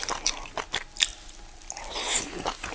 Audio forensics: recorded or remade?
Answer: recorded